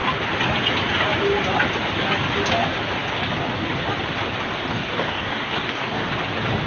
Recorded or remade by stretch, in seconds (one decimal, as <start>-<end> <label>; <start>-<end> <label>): 0.0-4.7 recorded; 4.7-6.1 remade; 6.1-6.7 recorded